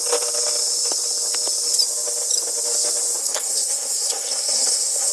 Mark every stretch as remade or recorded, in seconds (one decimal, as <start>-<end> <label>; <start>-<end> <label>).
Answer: 0.0-3.2 recorded; 3.2-5.1 remade